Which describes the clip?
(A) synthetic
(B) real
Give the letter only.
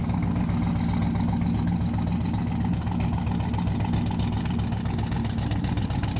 B